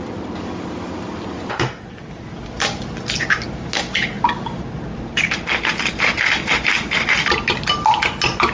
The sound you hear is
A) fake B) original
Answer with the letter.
B